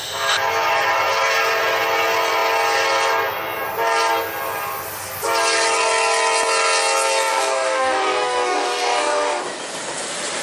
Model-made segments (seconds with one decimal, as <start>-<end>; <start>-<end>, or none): 7.3-9.4